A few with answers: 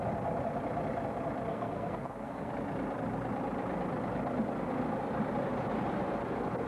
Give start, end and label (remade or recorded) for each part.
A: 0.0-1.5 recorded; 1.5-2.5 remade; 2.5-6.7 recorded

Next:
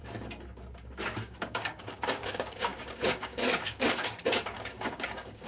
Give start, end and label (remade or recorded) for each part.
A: 0.0-1.0 recorded; 1.0-5.5 remade

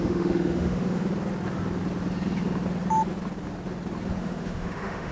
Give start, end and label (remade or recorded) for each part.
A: 0.0-1.1 remade; 1.1-4.2 recorded; 4.2-5.1 remade

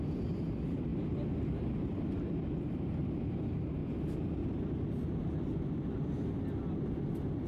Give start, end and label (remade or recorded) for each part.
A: 0.0-7.5 recorded

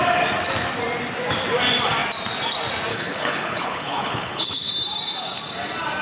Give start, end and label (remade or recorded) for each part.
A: 0.0-2.9 recorded; 2.9-4.7 remade; 4.7-6.0 recorded

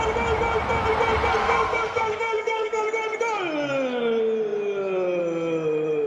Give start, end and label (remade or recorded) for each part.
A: 0.0-1.4 recorded; 1.4-2.8 remade; 2.8-6.1 recorded